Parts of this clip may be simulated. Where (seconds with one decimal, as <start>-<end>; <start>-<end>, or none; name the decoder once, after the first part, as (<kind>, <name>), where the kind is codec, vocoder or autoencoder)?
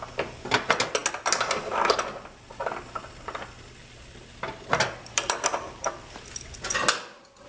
3.8-6.3 (vocoder, BigVGAN v2)